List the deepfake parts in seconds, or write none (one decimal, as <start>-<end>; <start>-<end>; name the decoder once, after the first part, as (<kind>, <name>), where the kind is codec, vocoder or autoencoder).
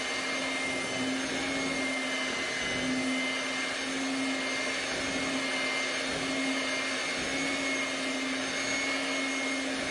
none